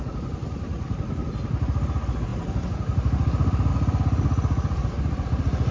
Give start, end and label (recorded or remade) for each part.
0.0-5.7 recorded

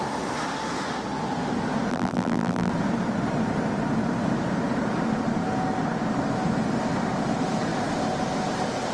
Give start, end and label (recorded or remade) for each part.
0.0-1.9 recorded; 1.9-2.7 remade; 2.7-8.9 recorded

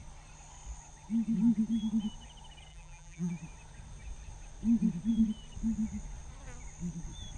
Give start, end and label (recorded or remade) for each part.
0.0-2.7 recorded; 2.7-3.3 remade; 3.3-7.4 recorded

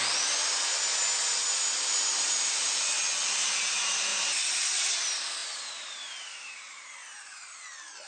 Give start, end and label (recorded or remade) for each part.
0.0-2.1 recorded; 2.1-3.0 remade; 3.0-4.1 recorded; 4.1-4.9 remade; 4.9-5.4 recorded; 5.4-7.6 remade; 7.6-8.1 recorded

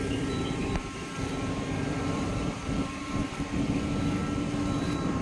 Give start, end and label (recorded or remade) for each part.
0.0-4.2 remade; 4.2-4.8 recorded; 4.8-5.2 remade

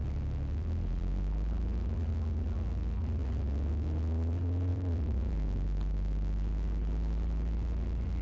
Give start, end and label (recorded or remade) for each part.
0.0-4.7 recorded; 4.7-5.3 remade; 5.3-8.2 recorded